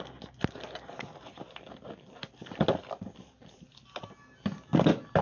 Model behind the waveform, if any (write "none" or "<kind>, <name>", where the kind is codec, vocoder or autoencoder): none